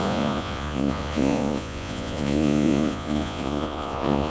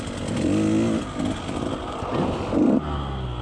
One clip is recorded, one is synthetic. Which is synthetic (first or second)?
first